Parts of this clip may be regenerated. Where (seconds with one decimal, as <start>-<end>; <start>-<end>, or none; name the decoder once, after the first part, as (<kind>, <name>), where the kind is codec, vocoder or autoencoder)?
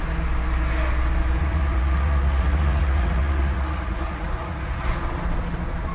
1.4-4.9 (vocoder, Vocos)